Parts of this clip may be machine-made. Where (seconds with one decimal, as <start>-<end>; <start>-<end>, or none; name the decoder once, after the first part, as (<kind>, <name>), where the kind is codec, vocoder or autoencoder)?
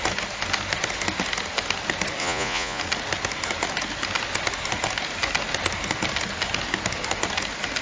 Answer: 2.2-2.8 (vocoder, Vocos)